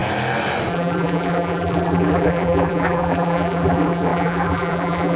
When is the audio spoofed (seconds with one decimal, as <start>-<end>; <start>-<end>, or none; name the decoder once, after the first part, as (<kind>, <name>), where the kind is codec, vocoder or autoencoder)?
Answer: 0.7-5.2 (vocoder, BigVGAN v2)